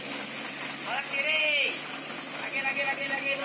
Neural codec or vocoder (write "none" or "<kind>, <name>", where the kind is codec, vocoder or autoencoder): none